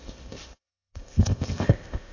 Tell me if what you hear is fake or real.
fake